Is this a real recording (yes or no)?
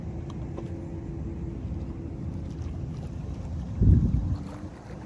yes